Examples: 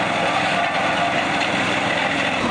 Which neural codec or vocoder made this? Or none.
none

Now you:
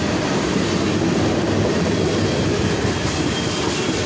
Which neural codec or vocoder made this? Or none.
none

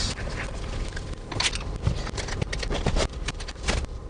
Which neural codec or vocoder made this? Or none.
none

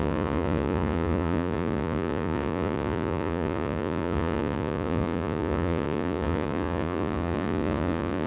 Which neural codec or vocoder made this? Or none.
vocoder, Vocos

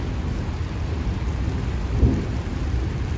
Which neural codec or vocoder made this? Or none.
none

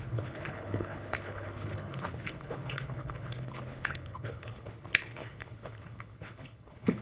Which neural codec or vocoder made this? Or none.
codec, HILCodec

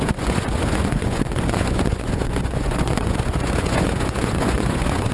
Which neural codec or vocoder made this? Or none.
vocoder, Vocos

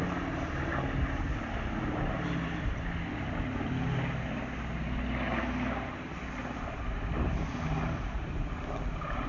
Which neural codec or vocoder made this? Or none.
none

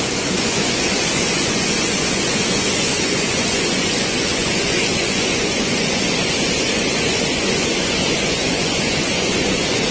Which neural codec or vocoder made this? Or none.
vocoder, Vocos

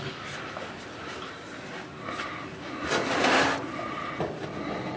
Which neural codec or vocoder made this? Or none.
none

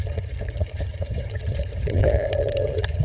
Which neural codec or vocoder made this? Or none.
vocoder, HiFi-GAN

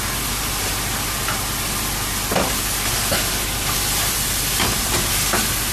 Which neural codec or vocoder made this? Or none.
none